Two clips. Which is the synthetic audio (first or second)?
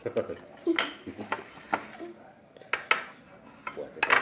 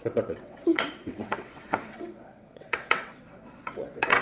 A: second